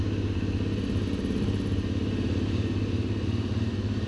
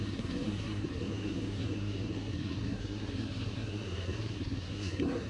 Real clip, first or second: first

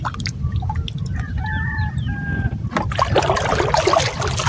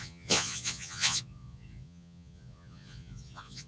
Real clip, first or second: first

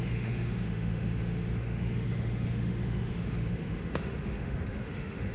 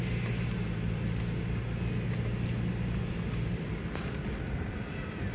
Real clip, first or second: second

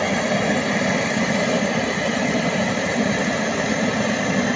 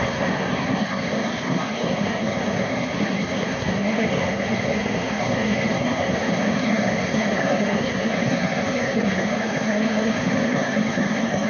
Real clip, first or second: first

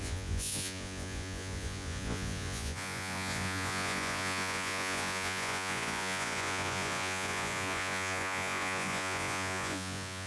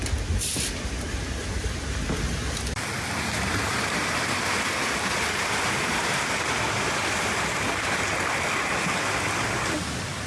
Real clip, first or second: second